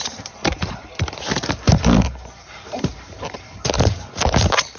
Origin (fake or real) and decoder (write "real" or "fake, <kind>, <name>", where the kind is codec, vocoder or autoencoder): fake, vocoder, BigVGAN v2